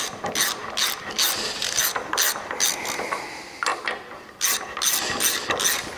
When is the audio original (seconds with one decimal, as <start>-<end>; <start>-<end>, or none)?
0.0-6.0